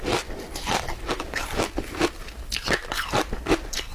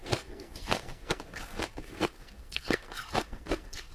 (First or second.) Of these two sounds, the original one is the first